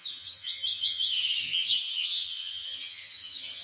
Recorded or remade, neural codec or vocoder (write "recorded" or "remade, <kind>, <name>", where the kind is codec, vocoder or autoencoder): remade, vocoder, HiFi-GAN